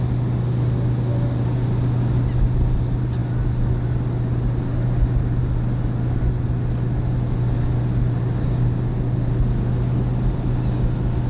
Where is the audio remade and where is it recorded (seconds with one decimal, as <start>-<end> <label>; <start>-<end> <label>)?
0.0-11.3 recorded